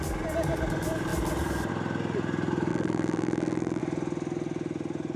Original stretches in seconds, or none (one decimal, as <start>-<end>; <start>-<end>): 0.0-2.7; 3.8-5.2

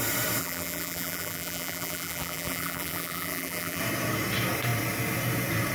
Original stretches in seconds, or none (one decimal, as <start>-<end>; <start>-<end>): 0.0-0.4; 3.8-5.7

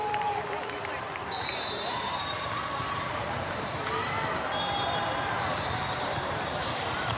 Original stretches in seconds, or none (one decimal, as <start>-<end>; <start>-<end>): 3.8-4.6

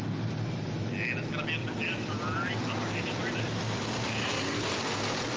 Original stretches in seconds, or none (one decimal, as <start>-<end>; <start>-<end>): 0.0-1.6; 4.8-5.4

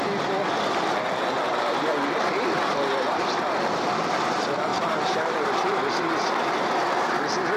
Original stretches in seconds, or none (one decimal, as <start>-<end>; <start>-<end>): 0.0-1.4; 1.9-4.7; 5.8-7.6

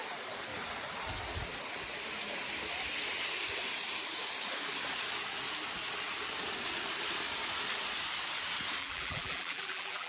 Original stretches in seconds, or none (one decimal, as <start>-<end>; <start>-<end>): 0.0-8.8

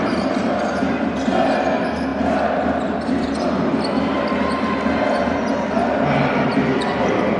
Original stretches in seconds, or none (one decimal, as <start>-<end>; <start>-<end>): 0.0-7.4